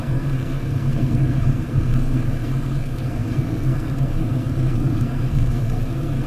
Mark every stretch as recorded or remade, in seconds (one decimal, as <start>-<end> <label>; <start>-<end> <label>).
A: 0.0-6.3 remade